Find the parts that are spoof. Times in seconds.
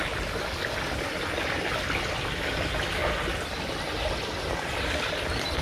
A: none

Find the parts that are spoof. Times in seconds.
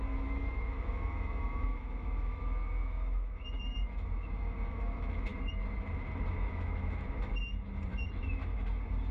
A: 0.0-5.3 (autoencoder, DAC-VAE); 6.5-7.3; 7.9-8.4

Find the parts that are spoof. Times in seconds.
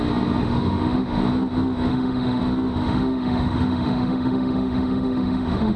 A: 0.4-1.2 (autoencoder, DAC-VAE); 1.9-2.4; 2.8-5.8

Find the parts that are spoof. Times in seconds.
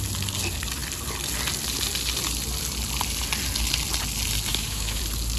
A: 4.5-5.0 (autoencoder, DAC-VAE)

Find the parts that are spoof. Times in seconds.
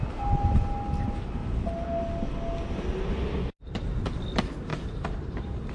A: 4.7-5.7 (vocoder, BigVGAN v2)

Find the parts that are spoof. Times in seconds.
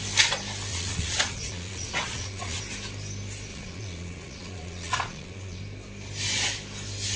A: 0.7-2.6 (vocoder, Vocos); 3.5-5.6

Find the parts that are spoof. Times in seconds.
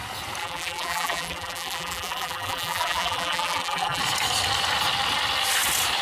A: 0.4-4.0 (vocoder, BigVGAN v2)